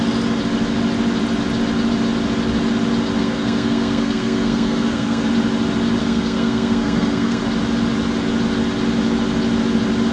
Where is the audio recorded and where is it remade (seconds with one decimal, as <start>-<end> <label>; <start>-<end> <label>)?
0.0-3.2 recorded; 3.2-5.3 remade; 5.3-6.0 recorded; 6.0-7.4 remade; 7.4-10.1 recorded